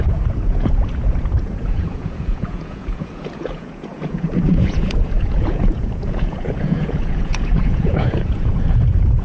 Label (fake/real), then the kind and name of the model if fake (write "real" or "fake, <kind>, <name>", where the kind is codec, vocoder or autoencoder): fake, vocoder, Vocos